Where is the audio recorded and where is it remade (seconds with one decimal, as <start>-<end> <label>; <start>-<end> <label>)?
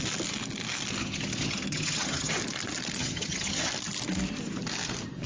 0.0-1.0 recorded; 1.0-2.4 remade; 2.4-3.0 recorded; 3.0-3.7 remade; 3.7-5.3 recorded